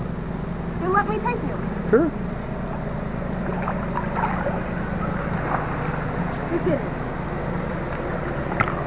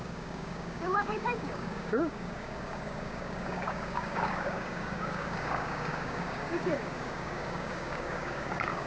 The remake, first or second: second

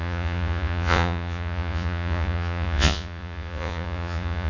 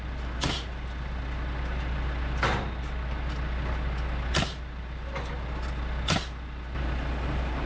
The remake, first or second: first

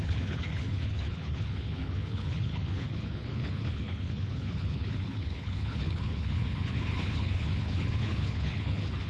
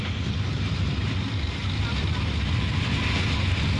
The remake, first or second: first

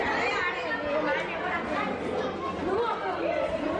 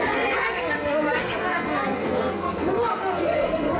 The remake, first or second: second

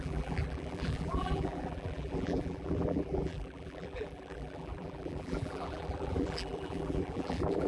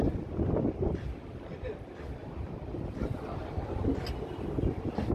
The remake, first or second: first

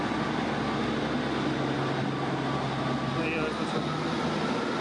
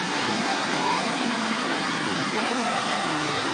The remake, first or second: second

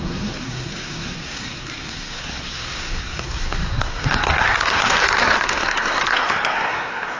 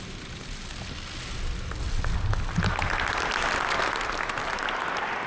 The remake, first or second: first